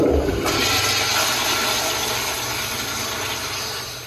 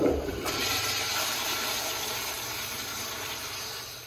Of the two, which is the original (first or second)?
first